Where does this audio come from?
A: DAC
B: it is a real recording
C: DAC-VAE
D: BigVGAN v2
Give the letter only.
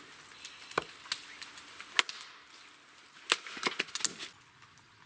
B